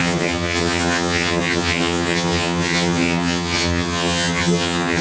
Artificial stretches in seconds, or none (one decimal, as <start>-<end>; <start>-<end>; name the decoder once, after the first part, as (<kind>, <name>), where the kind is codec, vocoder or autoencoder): 0.0-5.0 (vocoder, HiFi-GAN)